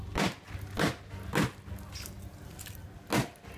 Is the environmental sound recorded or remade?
recorded